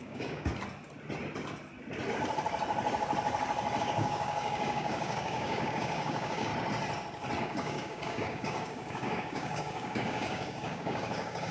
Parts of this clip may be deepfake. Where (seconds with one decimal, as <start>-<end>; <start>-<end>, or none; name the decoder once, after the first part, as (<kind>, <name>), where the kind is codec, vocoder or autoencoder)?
0.0-0.5 (codec, DAC); 3.8-6.5; 7.4-11.5